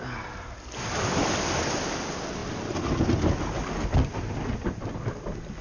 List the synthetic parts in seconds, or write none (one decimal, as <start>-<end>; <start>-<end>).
none